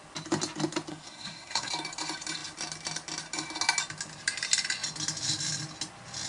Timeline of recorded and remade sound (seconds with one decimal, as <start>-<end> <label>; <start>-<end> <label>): 0.0-0.9 recorded; 0.9-1.7 remade; 1.7-6.3 recorded